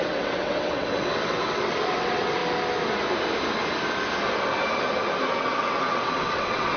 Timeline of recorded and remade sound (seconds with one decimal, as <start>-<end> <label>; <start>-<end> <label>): 0.0-2.4 remade; 2.4-5.4 recorded; 5.4-6.8 remade